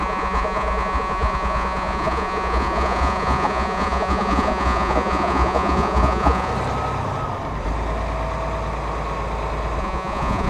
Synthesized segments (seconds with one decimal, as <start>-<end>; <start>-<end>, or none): 0.0-6.5; 9.8-10.5